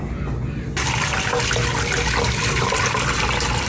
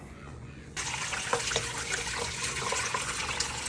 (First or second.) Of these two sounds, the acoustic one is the first